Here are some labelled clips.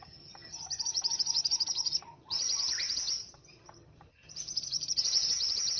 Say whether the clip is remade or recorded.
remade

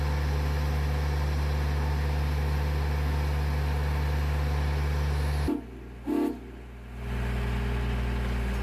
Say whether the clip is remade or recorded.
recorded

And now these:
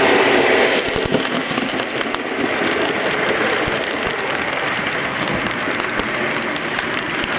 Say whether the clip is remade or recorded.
recorded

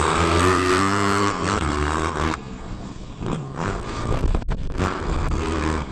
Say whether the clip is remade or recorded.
remade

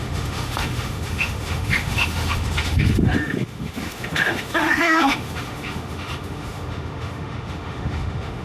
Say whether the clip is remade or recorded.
remade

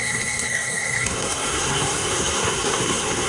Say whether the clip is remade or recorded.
remade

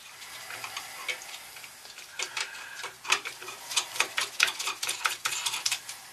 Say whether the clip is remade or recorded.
recorded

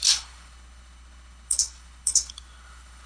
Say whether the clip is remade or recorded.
remade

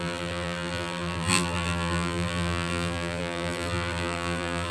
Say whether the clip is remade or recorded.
remade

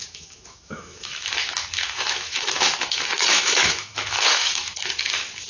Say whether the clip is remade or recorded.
remade